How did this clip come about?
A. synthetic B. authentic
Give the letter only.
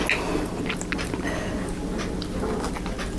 B